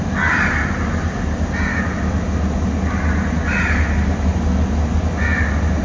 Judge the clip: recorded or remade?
recorded